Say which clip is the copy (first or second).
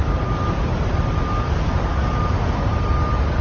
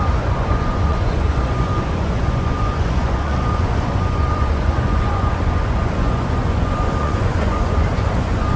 second